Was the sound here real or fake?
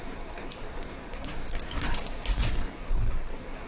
fake